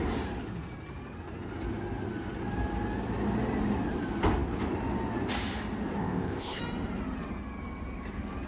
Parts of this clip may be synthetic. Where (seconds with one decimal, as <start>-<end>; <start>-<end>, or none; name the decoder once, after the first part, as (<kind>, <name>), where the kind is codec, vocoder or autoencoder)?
6.0-6.6 (codec, ZipCodec)